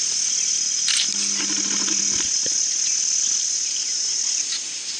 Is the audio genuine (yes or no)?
yes